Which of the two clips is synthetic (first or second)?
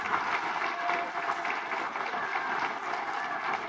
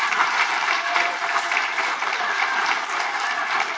second